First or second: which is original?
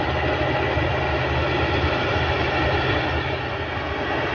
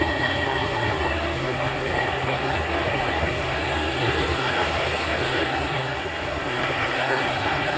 first